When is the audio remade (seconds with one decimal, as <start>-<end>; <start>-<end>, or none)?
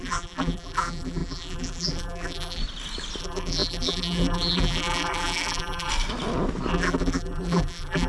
0.0-2.6; 3.2-5.9; 6.7-8.1